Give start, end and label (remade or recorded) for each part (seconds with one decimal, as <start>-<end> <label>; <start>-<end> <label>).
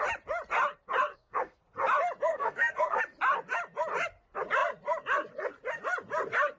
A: 0.0-1.1 recorded; 1.1-1.6 remade; 1.6-2.3 recorded; 2.3-3.0 remade; 3.0-6.6 recorded